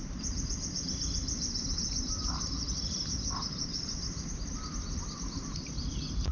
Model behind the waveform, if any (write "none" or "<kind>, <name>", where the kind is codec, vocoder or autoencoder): none